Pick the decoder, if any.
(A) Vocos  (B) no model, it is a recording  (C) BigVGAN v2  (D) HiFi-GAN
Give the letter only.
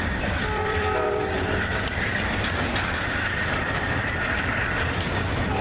C